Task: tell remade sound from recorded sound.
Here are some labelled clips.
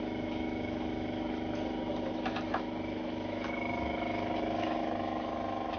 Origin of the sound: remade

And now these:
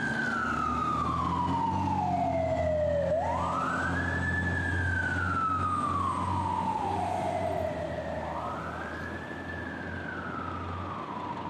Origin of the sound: recorded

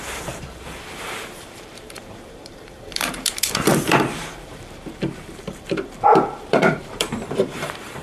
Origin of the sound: remade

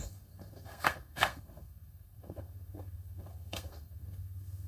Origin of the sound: remade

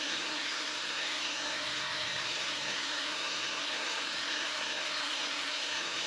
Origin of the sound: remade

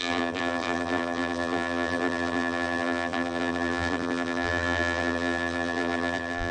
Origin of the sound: remade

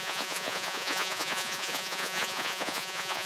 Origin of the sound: remade